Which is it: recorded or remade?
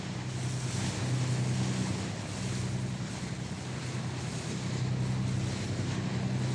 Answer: recorded